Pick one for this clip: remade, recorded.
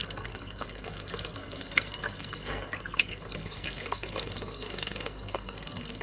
remade